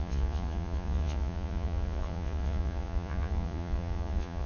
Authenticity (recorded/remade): remade